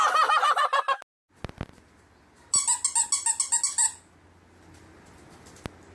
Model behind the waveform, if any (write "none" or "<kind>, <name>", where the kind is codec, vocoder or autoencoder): none